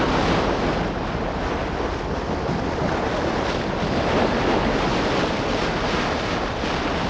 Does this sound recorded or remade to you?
recorded